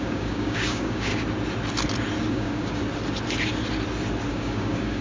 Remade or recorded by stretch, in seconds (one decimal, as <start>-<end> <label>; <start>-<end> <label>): 0.0-1.1 remade; 1.1-2.3 recorded; 2.3-2.8 remade; 2.8-4.3 recorded; 4.3-5.0 remade

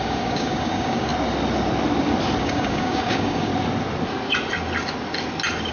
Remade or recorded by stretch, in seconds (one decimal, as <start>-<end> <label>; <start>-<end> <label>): 0.0-1.1 remade; 1.1-2.4 recorded; 2.4-3.5 remade; 3.5-5.7 recorded

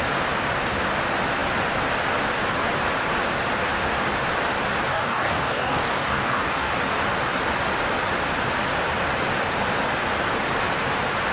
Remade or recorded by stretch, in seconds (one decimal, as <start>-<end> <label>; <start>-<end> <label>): 0.0-4.9 recorded; 4.9-6.7 remade; 6.7-11.3 recorded